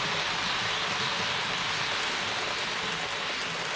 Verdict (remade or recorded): recorded